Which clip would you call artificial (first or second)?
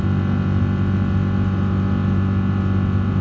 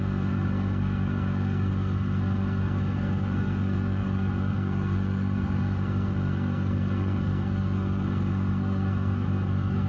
second